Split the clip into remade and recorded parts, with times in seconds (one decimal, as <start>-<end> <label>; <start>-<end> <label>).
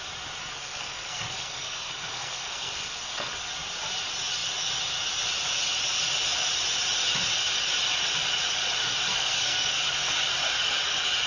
0.0-0.4 recorded; 0.4-3.3 remade; 3.3-9.1 recorded; 9.1-9.8 remade; 9.8-11.3 recorded